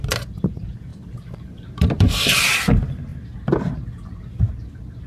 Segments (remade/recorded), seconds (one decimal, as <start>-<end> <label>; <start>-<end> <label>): 0.0-3.1 remade; 3.1-5.1 recorded